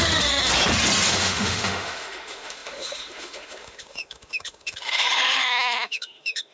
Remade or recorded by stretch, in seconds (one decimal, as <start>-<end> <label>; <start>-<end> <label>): 0.0-0.4 remade; 0.4-1.1 recorded; 1.1-6.5 remade